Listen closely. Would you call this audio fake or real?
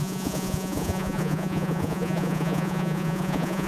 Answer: fake